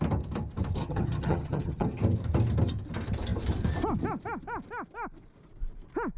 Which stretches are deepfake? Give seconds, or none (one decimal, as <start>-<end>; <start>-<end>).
0.8-2.0